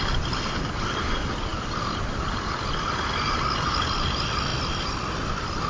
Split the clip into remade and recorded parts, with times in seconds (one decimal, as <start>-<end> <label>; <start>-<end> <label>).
0.0-5.7 recorded